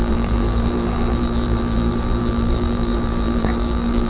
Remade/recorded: remade